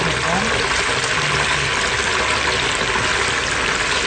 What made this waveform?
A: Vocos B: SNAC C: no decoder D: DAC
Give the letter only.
C